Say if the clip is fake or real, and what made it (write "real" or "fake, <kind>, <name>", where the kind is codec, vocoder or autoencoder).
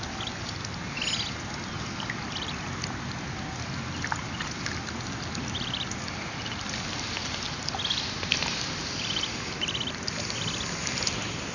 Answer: real